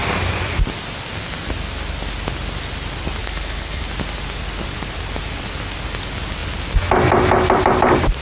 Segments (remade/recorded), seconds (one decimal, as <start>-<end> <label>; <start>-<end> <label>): 0.0-3.2 recorded; 3.2-3.8 remade; 3.8-8.2 recorded